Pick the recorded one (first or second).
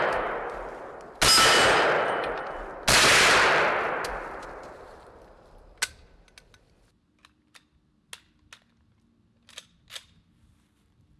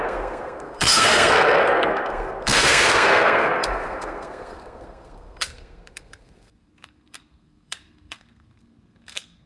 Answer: first